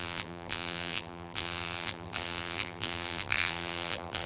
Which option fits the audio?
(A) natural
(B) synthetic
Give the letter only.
B